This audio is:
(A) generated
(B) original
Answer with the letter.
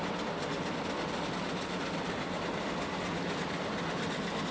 B